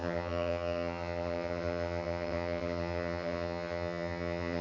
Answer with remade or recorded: remade